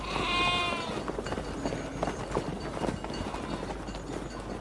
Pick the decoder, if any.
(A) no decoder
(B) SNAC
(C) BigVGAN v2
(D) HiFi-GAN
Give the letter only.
A